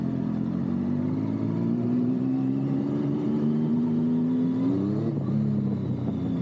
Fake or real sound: real